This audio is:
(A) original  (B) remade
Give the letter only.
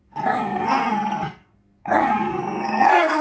B